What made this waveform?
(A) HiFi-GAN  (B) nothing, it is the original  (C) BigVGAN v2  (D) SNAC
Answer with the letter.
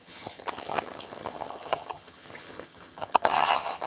A